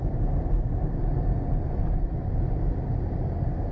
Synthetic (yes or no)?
no